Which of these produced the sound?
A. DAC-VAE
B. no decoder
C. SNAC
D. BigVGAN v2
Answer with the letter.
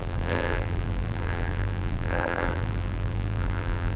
D